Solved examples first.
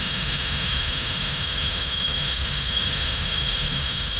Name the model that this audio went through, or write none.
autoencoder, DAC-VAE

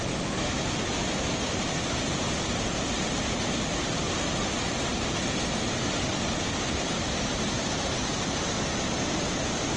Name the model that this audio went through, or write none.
none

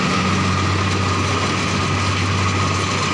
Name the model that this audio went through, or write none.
none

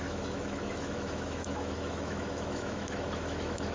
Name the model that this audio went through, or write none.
autoencoder, DAC-VAE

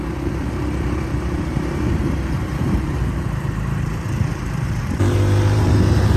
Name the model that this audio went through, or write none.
vocoder, BigVGAN v2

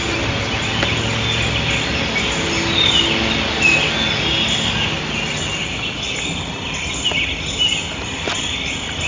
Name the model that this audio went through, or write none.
none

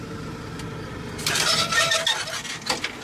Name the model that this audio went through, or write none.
none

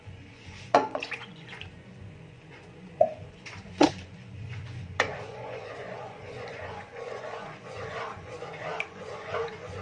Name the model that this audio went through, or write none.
vocoder, Vocos